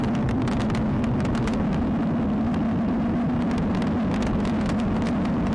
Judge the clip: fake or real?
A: real